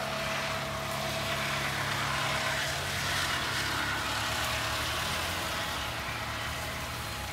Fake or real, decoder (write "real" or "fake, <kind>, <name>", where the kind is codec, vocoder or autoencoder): real